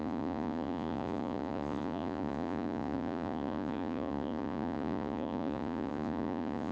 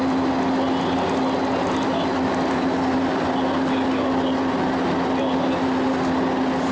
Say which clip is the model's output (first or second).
first